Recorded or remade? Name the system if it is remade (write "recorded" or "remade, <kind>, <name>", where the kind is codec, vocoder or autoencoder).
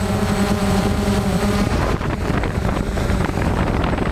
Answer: remade, vocoder, BigVGAN v2